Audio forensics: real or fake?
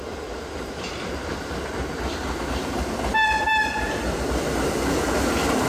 real